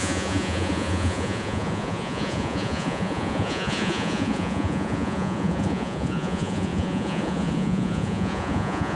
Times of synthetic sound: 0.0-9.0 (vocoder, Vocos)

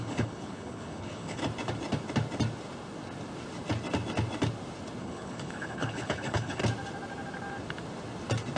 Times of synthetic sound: 0.0-1.4 (codec, HILCodec); 5.0-6.6

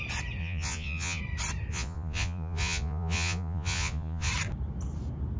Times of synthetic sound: 0.4-1.2 (vocoder, Vocos); 1.7-4.3

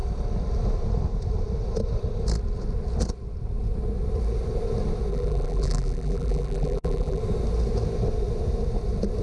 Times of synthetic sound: 5.1-7.2 (vocoder, BigVGAN v2)

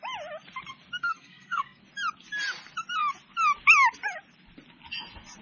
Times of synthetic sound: 1.0-1.8 (codec, SNAC)